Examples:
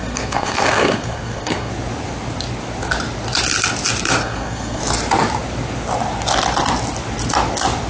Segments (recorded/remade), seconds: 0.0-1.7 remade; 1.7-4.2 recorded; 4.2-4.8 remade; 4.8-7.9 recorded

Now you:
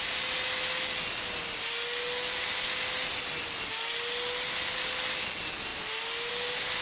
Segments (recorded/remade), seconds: 0.0-6.8 recorded

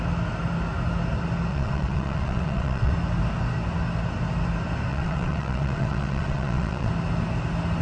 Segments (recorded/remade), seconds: 0.0-1.5 recorded; 1.5-2.9 remade; 2.9-4.9 recorded; 4.9-6.9 remade; 6.9-7.8 recorded